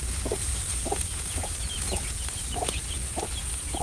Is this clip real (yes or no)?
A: no